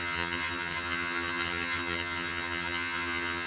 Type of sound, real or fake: fake